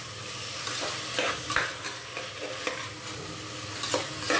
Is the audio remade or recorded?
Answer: recorded